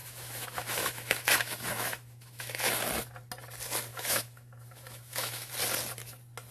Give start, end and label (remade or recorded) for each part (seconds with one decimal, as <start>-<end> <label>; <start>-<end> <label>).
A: 0.0-2.7 remade; 2.7-3.9 recorded; 3.9-5.5 remade; 5.5-6.5 recorded